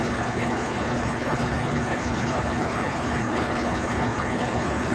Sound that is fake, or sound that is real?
fake